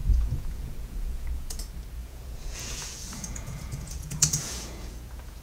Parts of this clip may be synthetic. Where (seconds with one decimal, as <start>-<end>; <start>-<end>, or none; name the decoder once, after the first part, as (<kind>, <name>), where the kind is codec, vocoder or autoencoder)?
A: 0.0-1.6 (vocoder, Vocos); 2.0-5.4